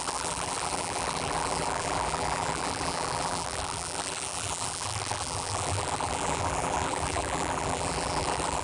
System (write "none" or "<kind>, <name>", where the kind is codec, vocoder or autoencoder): vocoder, BigVGAN v2